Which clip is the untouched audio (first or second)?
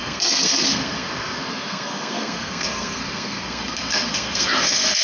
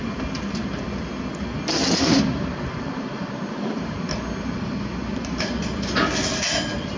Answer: second